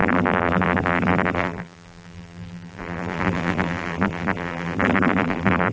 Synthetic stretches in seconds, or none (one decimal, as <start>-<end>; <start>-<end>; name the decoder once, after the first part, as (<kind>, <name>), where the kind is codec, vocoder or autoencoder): 0.0-5.7 (vocoder, BigVGAN v2)